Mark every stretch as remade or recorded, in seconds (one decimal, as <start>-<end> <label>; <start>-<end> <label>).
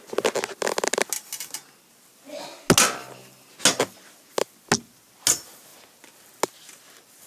0.0-7.3 recorded